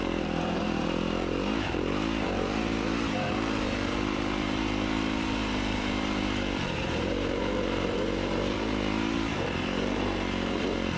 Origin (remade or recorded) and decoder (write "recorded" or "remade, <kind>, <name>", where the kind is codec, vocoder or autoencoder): remade, vocoder, BigVGAN v2